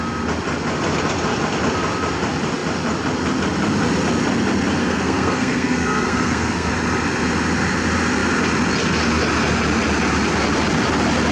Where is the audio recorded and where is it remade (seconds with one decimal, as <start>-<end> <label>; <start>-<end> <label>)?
0.0-4.8 recorded; 4.8-6.7 remade; 6.7-11.3 recorded